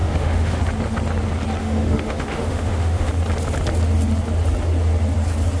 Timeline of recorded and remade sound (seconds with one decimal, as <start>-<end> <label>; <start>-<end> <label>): 0.0-0.6 remade; 0.6-1.6 recorded; 1.6-3.1 remade; 3.1-5.6 recorded